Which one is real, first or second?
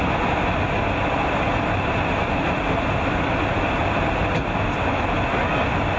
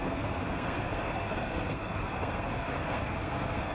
first